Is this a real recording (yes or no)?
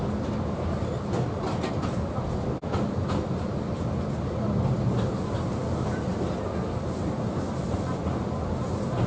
yes